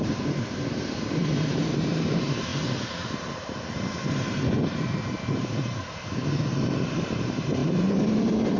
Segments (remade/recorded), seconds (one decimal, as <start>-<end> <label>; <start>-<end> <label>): 0.0-2.5 remade; 2.5-3.1 recorded; 3.1-5.8 remade; 5.8-6.9 recorded; 6.9-7.6 remade; 7.6-8.6 recorded